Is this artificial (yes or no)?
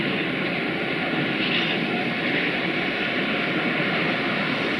no